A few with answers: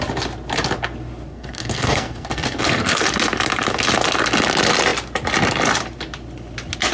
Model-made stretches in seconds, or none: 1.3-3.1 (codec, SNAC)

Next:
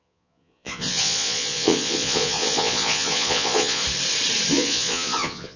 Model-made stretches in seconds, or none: 0.0-3.8 (vocoder, Vocos); 4.5-5.6

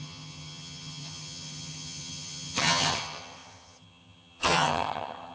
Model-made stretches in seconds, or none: 0.0-5.3 (vocoder, HiFi-GAN)

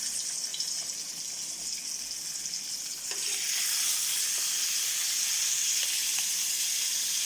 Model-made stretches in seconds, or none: none

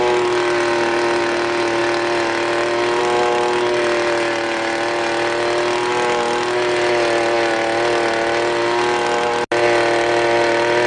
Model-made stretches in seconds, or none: none